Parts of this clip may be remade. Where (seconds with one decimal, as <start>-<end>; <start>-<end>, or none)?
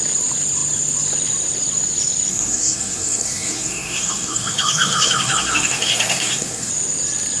2.3-6.7